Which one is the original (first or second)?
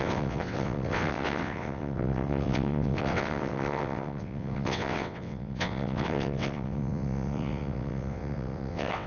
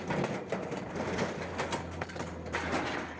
second